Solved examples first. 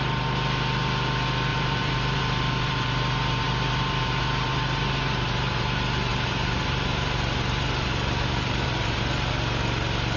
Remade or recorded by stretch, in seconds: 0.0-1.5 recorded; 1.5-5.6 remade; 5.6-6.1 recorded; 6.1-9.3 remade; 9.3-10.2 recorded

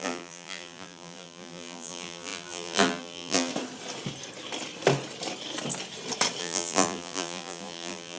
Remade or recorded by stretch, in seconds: 0.0-3.5 remade; 3.5-6.4 recorded; 6.4-8.2 remade

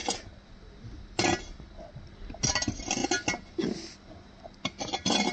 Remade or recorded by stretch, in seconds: 0.0-5.3 recorded

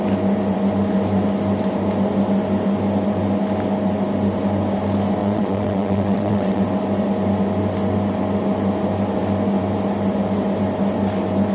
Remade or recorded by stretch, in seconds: 0.0-5.2 recorded; 5.2-6.6 remade; 6.6-11.5 recorded